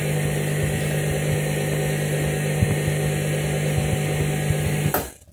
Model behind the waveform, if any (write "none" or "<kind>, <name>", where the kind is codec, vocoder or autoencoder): none